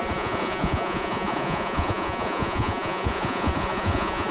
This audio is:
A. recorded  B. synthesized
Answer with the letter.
B